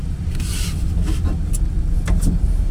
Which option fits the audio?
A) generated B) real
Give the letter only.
B